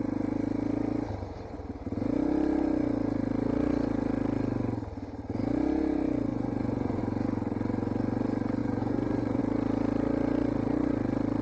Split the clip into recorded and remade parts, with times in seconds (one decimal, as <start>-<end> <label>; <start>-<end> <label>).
0.0-6.3 recorded; 6.3-7.0 remade; 7.0-8.6 recorded; 8.6-9.4 remade; 9.4-11.4 recorded